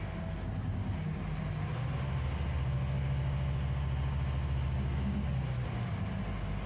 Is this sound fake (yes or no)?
no